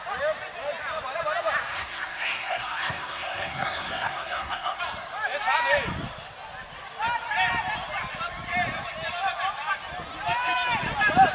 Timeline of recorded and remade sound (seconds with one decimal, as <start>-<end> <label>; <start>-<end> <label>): 0.0-1.7 recorded; 1.7-4.8 remade; 4.8-11.3 recorded